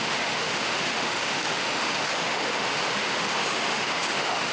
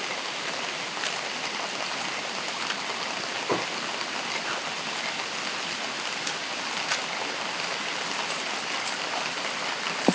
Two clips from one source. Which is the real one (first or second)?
second